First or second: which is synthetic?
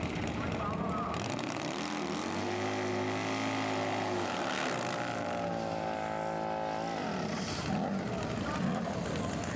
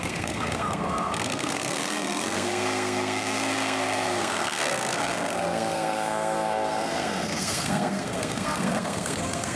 second